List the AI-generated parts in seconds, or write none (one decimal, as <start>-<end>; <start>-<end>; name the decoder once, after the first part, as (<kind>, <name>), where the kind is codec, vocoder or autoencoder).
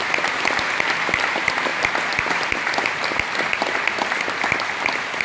none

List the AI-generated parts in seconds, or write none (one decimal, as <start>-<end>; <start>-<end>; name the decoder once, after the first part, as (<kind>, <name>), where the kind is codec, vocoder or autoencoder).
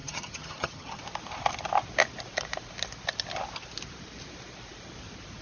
0.0-1.0 (vocoder, HiFi-GAN)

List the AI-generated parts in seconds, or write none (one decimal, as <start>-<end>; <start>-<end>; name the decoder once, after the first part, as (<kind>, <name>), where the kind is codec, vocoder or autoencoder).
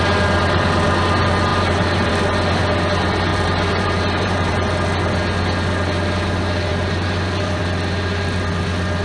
1.5-2.1 (vocoder, BigVGAN v2); 3.3-4.5; 6.7-7.6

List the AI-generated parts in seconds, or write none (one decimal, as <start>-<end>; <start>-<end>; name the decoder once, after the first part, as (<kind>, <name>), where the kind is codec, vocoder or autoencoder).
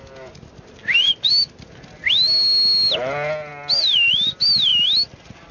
none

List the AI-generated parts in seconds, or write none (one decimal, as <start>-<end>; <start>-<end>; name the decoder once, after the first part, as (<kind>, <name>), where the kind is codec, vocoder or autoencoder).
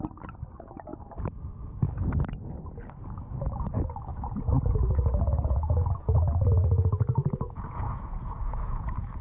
4.1-9.2 (vocoder, Vocos)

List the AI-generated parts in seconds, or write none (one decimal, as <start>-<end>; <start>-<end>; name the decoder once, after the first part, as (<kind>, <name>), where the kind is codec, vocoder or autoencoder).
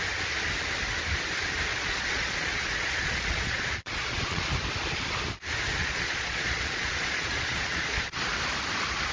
1.7-4.4 (vocoder, Vocos); 5.8-8.2